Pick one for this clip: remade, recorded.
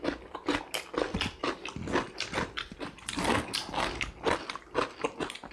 recorded